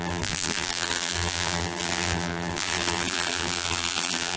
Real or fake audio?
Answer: fake